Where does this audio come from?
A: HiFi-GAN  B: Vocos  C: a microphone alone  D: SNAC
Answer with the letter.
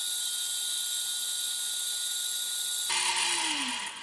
C